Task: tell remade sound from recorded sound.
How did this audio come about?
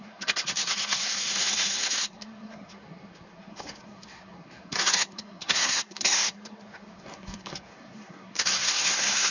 remade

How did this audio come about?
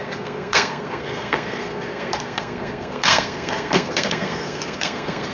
remade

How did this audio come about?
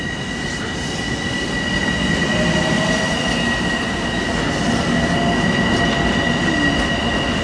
recorded